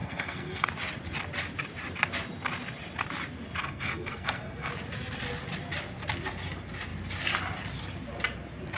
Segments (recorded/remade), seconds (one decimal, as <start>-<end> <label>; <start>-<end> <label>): 0.0-0.7 remade; 0.7-3.6 recorded; 3.6-4.7 remade; 4.7-8.8 recorded